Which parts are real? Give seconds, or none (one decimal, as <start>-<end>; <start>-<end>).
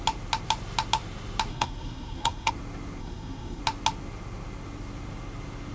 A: 0.0-1.5; 2.5-3.0; 3.6-5.7